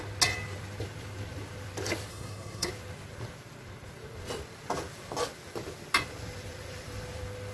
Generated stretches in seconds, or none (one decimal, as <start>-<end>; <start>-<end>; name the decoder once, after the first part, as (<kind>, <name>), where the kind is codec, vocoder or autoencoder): 2.1-2.7 (codec, SNAC)